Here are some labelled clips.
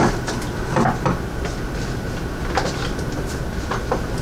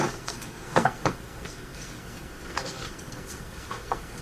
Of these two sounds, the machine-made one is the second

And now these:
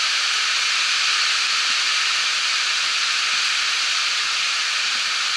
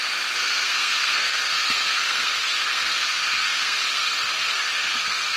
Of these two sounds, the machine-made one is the second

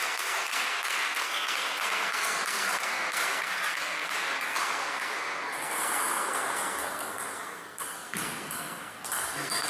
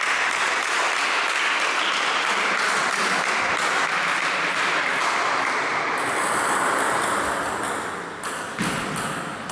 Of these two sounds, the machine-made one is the first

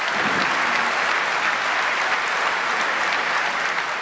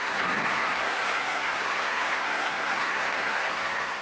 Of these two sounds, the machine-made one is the second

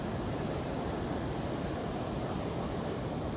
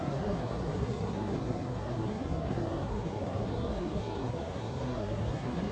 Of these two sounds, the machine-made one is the second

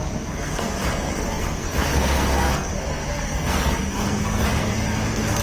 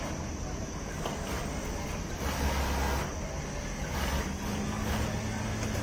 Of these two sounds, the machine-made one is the first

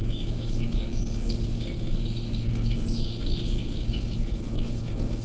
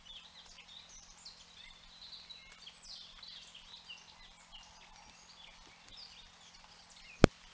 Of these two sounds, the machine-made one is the first